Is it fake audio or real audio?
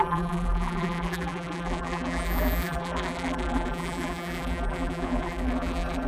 fake